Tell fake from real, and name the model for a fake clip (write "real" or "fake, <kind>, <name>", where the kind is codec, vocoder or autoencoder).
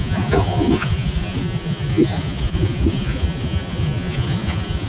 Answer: fake, vocoder, Vocos